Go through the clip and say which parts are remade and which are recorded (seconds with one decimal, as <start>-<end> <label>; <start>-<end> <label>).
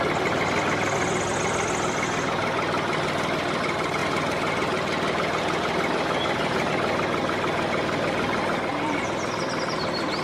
0.0-4.0 recorded; 4.0-6.7 remade; 6.7-8.7 recorded; 8.7-9.4 remade; 9.4-10.2 recorded